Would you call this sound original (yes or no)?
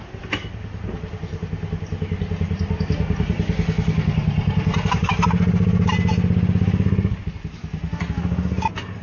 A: yes